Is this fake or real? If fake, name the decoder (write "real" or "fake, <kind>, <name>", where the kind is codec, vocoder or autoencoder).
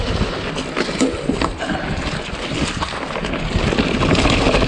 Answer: real